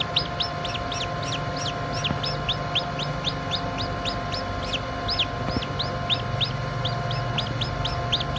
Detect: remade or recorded recorded